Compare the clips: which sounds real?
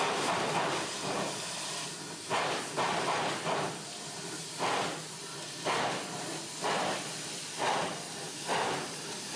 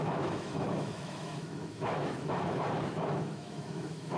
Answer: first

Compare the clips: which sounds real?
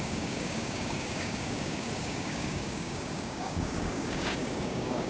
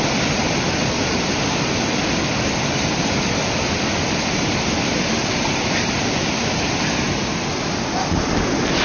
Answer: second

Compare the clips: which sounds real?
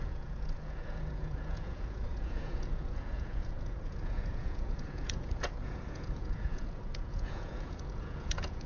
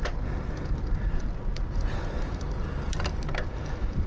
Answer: second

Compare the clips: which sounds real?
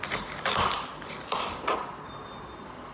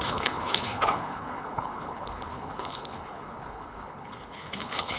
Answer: first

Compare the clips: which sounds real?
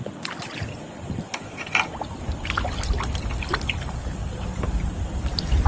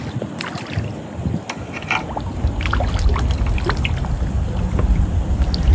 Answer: second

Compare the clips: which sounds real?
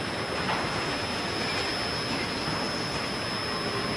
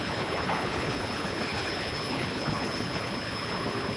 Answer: first